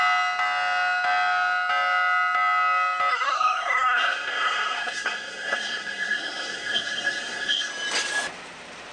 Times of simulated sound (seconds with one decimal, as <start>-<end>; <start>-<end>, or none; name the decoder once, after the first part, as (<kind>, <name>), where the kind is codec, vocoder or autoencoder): 3.1-7.7 (codec, SNAC)